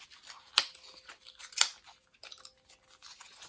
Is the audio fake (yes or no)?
no